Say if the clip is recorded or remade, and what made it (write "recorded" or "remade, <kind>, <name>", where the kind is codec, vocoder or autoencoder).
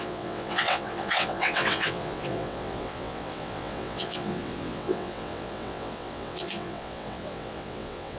remade, vocoder, WaveNeXt